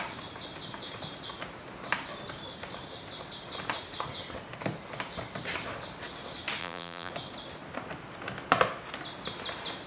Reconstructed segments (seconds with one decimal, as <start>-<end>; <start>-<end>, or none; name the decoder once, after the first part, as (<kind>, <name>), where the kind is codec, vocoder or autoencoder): 6.6-7.1 (vocoder, BigVGAN v2)